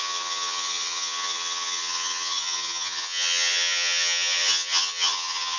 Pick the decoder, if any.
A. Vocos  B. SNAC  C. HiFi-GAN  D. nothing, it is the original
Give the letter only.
C